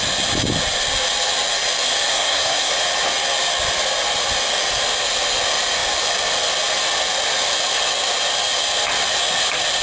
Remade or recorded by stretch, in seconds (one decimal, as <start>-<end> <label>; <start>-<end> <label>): 0.0-2.1 recorded; 2.1-2.7 remade; 2.7-9.8 recorded